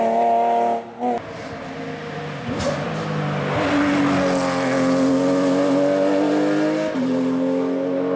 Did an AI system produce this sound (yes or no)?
no